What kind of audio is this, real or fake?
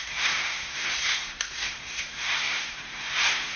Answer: fake